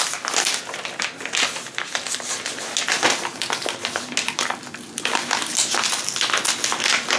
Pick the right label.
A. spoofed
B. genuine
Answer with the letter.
B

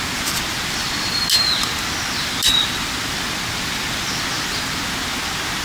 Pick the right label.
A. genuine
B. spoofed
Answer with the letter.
A